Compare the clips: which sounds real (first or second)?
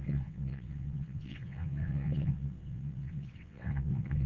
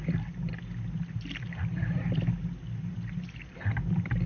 second